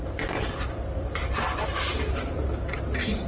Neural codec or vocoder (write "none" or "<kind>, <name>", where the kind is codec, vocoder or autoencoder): none